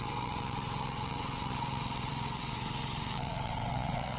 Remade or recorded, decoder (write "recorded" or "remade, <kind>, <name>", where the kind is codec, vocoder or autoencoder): remade, vocoder, WaveNeXt